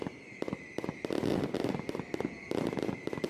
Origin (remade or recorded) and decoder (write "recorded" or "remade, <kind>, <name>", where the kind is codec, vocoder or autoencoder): recorded